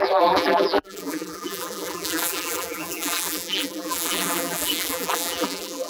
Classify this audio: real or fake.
fake